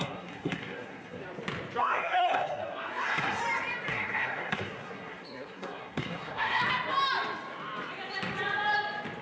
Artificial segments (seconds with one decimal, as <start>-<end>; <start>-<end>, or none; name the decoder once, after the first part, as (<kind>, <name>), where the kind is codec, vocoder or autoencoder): 0.0-1.2 (codec, SNAC); 1.8-3.4; 3.9-6.6